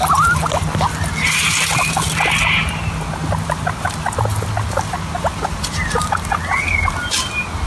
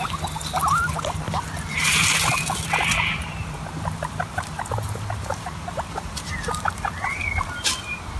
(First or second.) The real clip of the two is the first